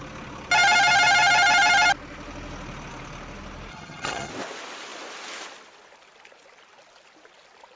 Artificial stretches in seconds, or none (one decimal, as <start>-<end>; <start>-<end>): 3.7-4.3